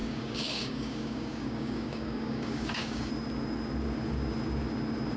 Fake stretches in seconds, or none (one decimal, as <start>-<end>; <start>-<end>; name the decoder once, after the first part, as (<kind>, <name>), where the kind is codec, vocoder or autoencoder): 0.0-3.1 (codec, DAC)